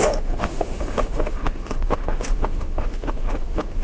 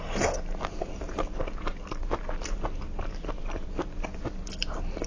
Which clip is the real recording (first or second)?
second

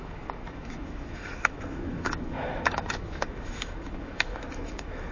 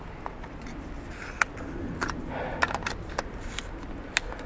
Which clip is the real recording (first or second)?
second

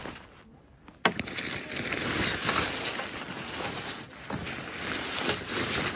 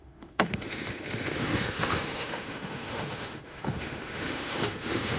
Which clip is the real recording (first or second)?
first